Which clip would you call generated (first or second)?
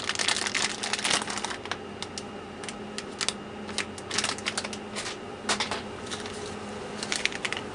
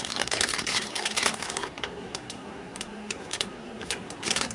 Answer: second